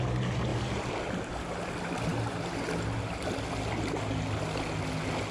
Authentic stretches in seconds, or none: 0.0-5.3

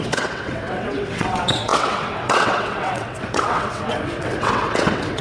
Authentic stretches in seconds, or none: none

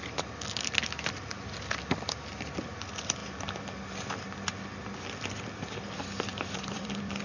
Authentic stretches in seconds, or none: 0.0-6.3